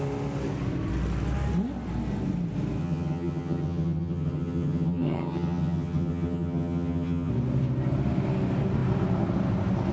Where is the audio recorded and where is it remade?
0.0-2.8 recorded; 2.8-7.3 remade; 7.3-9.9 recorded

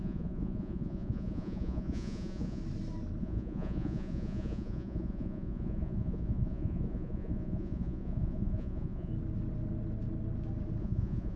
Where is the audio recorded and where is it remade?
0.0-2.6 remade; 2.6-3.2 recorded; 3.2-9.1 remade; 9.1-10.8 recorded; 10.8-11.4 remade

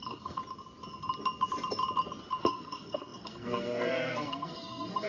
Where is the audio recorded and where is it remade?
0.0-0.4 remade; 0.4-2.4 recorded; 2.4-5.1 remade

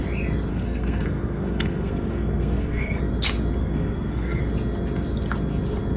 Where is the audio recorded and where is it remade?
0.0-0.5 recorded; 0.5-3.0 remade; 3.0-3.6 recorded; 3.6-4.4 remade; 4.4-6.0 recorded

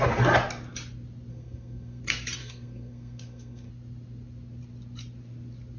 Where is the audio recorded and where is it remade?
0.0-1.3 recorded; 1.3-2.0 remade; 2.0-2.4 recorded; 2.4-3.7 remade; 3.7-5.8 recorded

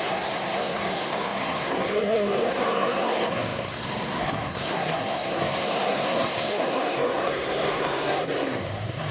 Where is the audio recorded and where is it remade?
0.0-9.1 remade